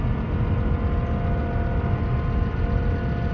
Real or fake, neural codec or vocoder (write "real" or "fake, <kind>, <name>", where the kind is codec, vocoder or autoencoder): real